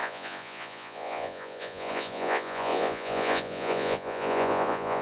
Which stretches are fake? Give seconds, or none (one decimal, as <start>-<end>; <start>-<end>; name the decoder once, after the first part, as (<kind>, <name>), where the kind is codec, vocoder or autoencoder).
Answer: 0.0-5.0 (vocoder, Vocos)